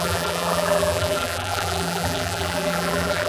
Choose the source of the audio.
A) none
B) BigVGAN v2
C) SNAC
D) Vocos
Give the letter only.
B